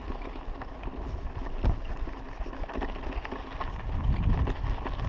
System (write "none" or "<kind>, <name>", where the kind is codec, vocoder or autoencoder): none